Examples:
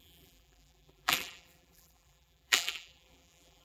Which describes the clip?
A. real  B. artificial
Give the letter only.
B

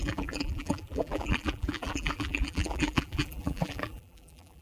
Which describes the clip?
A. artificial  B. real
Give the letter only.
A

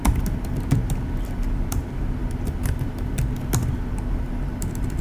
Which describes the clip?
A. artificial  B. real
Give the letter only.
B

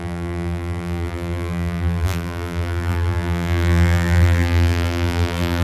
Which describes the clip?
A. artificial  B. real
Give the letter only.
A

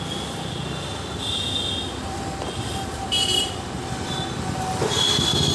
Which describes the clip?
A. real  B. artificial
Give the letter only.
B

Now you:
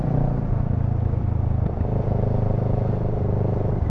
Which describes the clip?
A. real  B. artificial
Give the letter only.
B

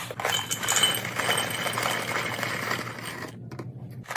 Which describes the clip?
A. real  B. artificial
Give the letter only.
A